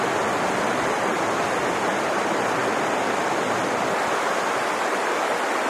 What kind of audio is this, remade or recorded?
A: recorded